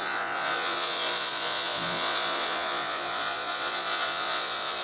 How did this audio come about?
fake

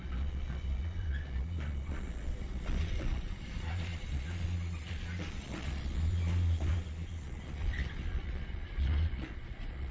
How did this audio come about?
fake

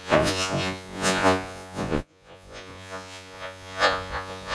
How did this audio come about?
fake